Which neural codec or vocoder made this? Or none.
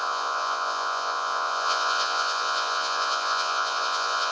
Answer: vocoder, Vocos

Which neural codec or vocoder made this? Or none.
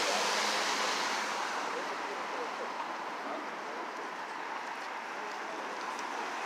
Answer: none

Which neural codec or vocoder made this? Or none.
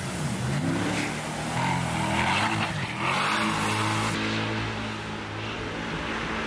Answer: none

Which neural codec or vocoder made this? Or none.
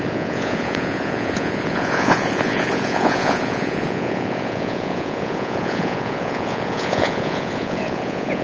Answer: vocoder, Vocos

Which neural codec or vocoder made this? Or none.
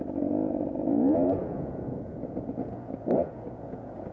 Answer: vocoder, Vocos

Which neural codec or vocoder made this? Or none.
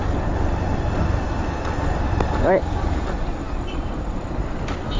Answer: none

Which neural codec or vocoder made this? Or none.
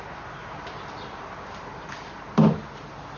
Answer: none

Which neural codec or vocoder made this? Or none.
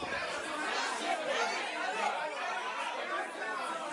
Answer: none